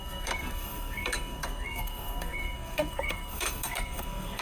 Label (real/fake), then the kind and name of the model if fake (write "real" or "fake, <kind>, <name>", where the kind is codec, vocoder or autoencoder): fake, codec, SNAC